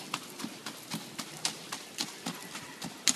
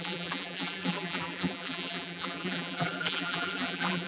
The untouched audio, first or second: first